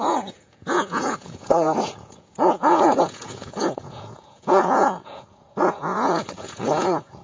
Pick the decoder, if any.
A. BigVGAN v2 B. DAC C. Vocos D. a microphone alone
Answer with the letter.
C